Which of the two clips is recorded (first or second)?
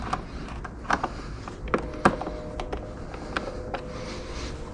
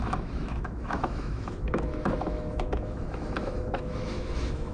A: first